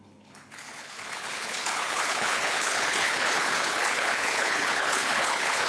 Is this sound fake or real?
fake